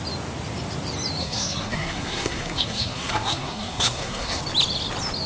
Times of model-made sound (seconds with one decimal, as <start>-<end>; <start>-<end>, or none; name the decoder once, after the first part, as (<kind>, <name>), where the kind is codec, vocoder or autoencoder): 1.2-4.4 (codec, SNAC)